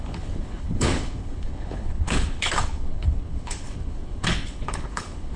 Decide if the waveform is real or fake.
fake